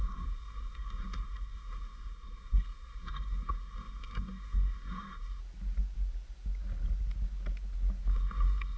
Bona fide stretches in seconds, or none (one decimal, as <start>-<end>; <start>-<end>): 5.4-8.1